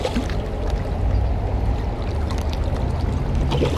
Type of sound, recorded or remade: recorded